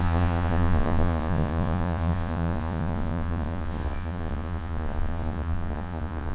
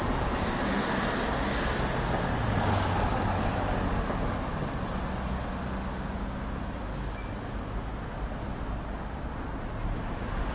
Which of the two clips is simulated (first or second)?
first